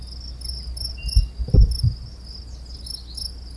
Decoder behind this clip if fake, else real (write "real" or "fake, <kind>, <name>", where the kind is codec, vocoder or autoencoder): real